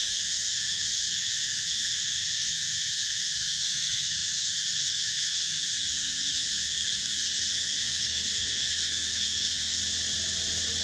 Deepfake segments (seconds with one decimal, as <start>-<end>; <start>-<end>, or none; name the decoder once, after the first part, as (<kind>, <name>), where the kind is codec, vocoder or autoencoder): 0.0-9.8 (codec, SNAC)